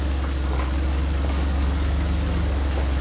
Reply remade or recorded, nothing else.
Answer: remade